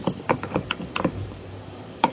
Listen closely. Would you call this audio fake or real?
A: fake